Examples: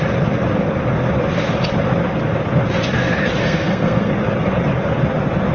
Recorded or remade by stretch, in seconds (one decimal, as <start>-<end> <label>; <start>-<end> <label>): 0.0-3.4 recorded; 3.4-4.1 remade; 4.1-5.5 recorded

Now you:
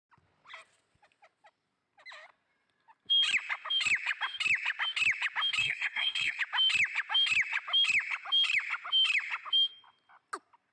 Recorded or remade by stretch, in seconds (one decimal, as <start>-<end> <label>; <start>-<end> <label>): 0.0-5.6 recorded; 5.6-6.4 remade; 6.4-10.7 recorded

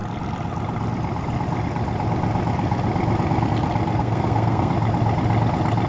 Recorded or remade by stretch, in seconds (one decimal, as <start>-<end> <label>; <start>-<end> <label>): 0.0-4.0 recorded; 4.0-4.7 remade; 4.7-5.9 recorded

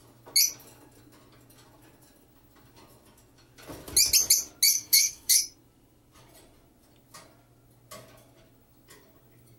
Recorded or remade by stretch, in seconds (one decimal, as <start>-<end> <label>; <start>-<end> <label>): 0.0-4.7 recorded; 4.7-5.4 remade; 5.4-9.6 recorded

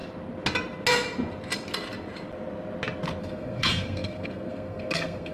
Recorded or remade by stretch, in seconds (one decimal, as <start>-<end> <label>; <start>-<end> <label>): 0.0-3.2 recorded; 3.2-5.3 remade

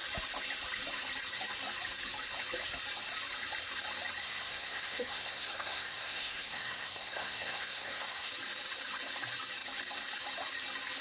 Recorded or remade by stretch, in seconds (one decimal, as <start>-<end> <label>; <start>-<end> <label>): 0.0-4.2 recorded; 4.2-8.3 remade; 8.3-11.0 recorded